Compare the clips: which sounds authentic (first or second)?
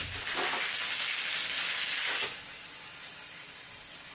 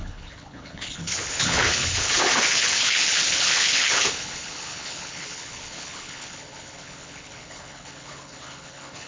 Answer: first